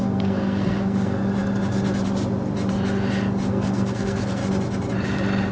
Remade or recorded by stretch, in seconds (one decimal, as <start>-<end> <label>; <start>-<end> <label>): 0.0-1.2 remade; 1.2-3.5 recorded; 3.5-4.4 remade; 4.4-5.5 recorded